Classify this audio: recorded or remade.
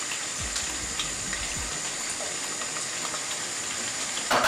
remade